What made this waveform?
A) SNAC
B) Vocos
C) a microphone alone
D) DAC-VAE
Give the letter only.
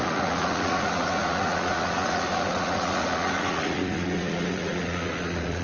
B